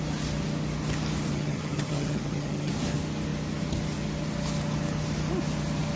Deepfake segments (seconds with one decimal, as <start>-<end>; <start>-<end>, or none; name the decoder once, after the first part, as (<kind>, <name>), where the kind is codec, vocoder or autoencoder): 1.3-2.7 (vocoder, HiFi-GAN)